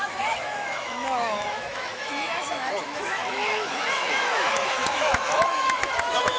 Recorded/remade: remade